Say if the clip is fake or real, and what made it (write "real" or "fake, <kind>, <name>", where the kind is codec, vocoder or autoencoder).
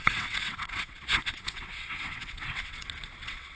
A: fake, vocoder, WaveNeXt